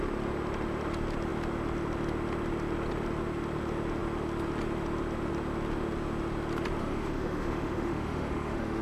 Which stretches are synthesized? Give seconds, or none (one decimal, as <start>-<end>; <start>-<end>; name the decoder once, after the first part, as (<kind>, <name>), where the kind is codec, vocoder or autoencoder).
6.8-8.8 (autoencoder, DAC-VAE)